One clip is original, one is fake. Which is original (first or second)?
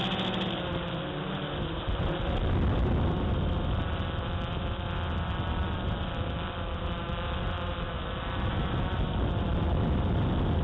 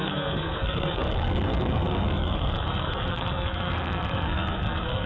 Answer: first